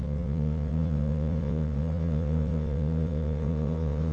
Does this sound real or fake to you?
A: fake